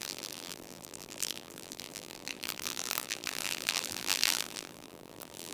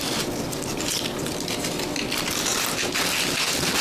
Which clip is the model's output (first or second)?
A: first